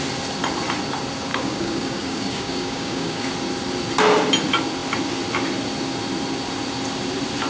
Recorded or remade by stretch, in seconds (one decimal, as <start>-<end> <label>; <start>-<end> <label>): 0.0-1.3 recorded; 1.3-3.3 remade; 3.3-7.5 recorded